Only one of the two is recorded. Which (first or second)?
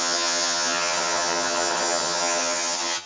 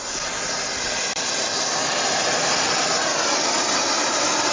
second